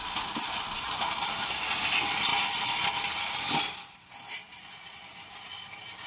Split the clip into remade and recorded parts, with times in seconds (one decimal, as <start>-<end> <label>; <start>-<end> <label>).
0.0-2.3 remade; 2.3-4.3 recorded; 4.3-6.1 remade